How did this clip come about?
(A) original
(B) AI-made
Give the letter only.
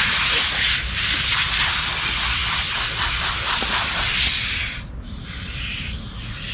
A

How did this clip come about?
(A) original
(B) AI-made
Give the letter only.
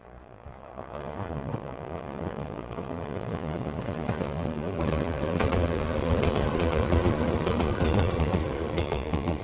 B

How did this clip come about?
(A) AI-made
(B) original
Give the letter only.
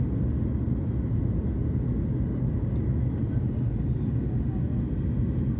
B